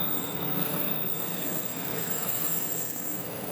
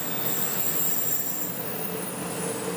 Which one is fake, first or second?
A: first